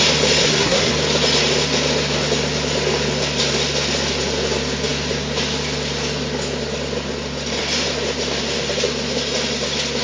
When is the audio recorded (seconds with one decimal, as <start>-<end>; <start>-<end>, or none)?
0.0-0.4; 0.9-10.0